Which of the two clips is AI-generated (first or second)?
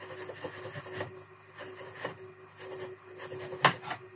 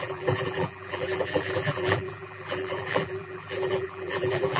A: second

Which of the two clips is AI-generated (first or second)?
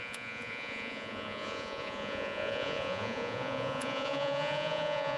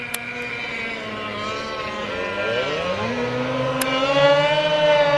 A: first